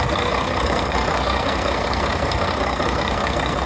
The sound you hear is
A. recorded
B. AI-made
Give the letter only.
B